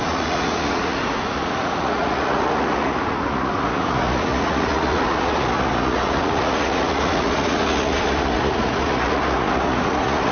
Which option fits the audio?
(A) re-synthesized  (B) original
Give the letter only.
A